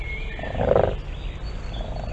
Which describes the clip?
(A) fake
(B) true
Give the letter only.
B